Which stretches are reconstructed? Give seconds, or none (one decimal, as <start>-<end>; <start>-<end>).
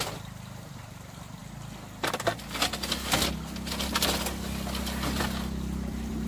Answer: 0.0-1.4; 5.2-6.3